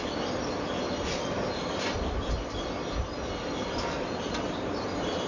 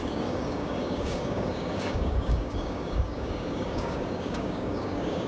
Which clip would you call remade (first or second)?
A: second